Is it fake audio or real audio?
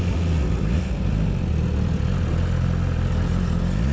real